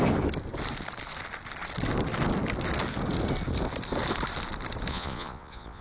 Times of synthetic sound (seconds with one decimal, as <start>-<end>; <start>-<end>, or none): 4.9-5.8